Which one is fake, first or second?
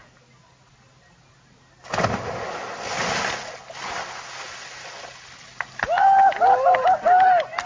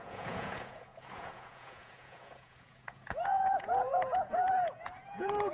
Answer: second